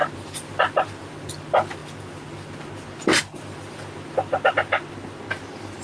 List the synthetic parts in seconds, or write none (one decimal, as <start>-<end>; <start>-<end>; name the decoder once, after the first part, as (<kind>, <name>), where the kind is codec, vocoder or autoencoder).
0.0-1.8 (vocoder, BigVGAN v2); 5.3-5.8